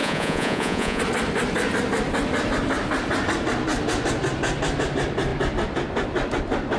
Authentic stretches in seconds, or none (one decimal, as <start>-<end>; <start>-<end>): 1.0-6.8